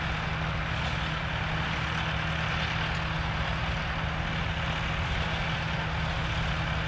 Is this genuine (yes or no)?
yes